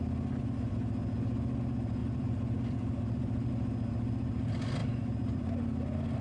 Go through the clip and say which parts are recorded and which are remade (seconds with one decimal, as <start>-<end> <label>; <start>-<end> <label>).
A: 0.0-2.0 recorded; 2.0-3.5 remade; 3.5-4.8 recorded; 4.8-5.5 remade; 5.5-6.2 recorded

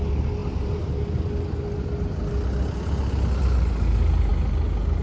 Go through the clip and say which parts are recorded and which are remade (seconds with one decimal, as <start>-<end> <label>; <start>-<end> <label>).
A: 0.0-5.0 recorded

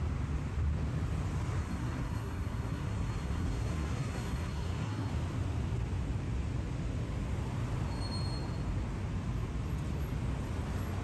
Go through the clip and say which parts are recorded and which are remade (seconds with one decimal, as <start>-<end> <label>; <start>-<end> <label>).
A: 0.0-1.6 recorded; 1.6-5.1 remade; 5.1-11.0 recorded

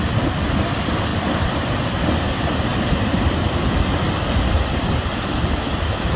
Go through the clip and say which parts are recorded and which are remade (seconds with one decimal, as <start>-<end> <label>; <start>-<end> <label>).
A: 0.0-6.2 recorded